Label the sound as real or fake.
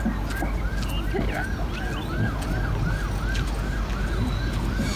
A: real